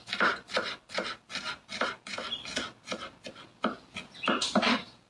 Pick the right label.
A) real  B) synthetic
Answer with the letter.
A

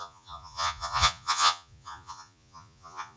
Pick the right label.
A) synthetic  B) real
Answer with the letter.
A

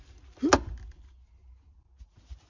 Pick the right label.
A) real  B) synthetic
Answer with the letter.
A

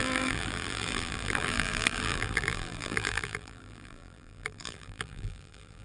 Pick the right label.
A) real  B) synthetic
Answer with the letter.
B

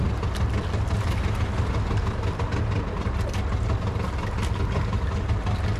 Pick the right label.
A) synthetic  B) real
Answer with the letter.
B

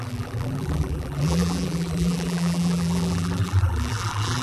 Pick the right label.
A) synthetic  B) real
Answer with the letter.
A